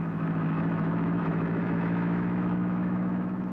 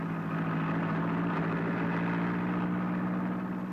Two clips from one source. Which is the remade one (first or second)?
first